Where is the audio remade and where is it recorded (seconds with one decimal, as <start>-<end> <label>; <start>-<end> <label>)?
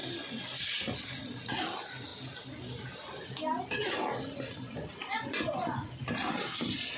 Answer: 0.0-7.0 recorded